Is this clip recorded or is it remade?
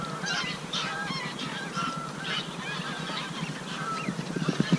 remade